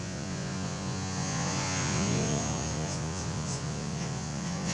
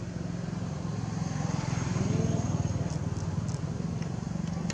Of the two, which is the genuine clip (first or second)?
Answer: second